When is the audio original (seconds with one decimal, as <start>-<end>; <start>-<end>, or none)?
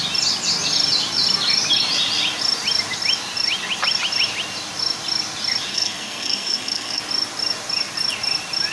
0.0-5.7; 7.0-8.7